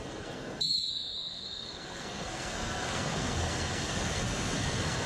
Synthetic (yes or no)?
yes